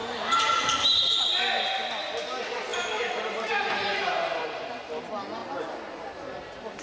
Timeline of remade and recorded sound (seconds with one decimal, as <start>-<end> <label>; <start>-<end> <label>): 0.0-1.0 remade; 1.0-2.7 recorded; 2.7-5.0 remade; 5.0-6.8 recorded